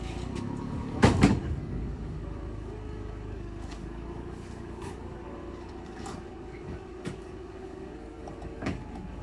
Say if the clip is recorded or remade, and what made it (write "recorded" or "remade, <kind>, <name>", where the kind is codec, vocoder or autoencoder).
remade, codec, DAC